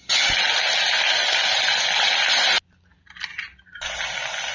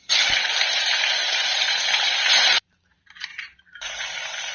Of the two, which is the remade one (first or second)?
second